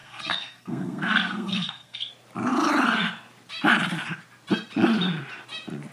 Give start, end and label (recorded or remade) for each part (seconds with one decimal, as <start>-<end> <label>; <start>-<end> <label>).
0.0-2.1 remade; 2.1-5.9 recorded